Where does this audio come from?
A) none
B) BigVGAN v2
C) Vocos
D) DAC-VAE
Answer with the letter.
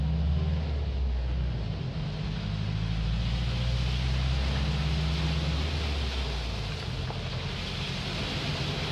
A